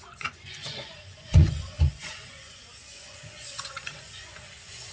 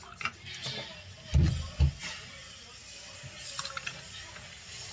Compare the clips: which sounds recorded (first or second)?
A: second